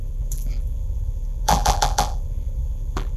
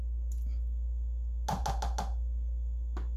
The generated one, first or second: first